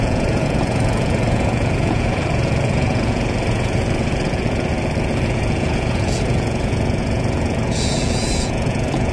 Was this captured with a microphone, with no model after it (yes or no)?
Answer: no